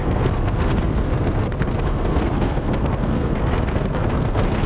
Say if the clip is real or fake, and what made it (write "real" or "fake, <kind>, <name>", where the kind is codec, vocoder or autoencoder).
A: fake, codec, SNAC